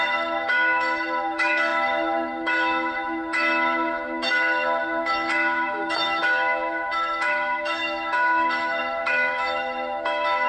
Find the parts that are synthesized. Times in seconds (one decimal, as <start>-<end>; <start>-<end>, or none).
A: 0.0-10.5